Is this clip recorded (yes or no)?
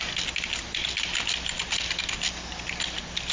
yes